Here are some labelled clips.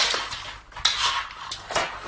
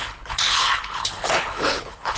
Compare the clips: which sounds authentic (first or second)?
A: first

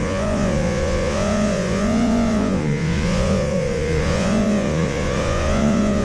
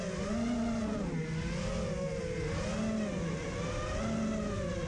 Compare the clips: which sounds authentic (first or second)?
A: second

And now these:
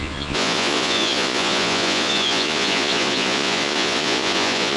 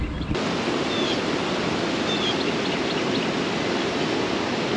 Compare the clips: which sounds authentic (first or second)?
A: second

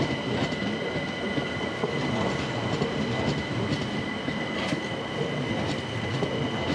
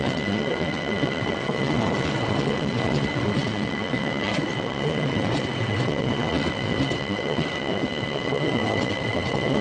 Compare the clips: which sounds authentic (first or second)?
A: first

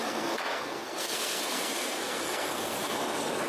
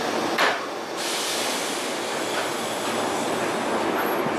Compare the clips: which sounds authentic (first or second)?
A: second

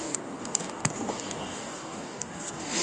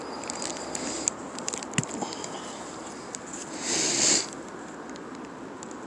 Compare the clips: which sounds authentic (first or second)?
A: second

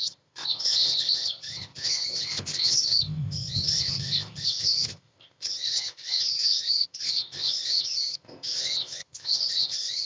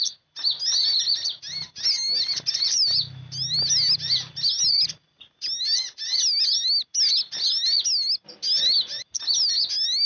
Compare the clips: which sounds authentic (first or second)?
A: second